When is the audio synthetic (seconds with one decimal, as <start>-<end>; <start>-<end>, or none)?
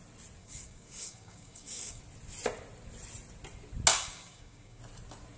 0.4-2.0; 3.9-4.8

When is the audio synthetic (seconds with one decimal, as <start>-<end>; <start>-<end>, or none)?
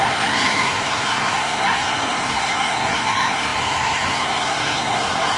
0.0-5.4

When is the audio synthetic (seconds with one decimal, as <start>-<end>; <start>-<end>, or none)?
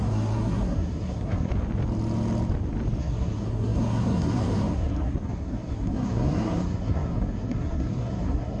0.0-1.5; 3.0-8.6